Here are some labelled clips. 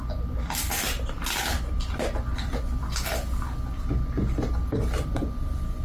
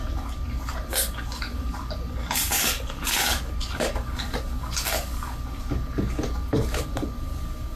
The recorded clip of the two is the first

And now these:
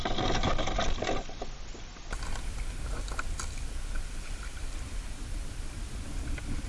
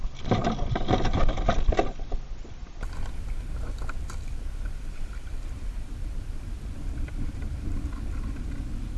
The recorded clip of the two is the first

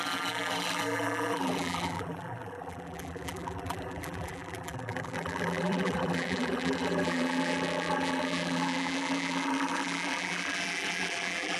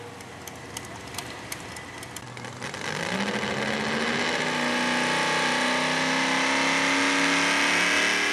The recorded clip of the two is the second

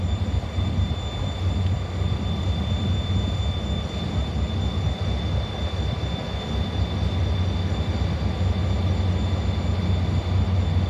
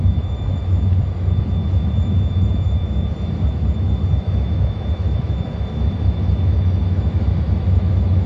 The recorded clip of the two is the first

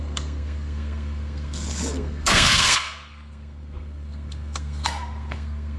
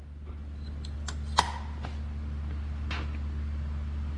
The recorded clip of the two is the second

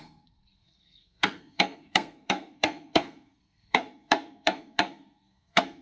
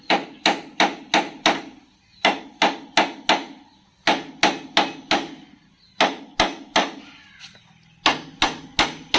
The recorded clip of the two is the second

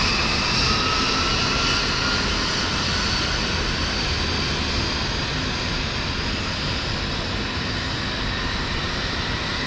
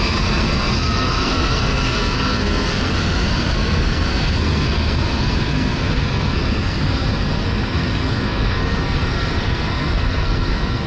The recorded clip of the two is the first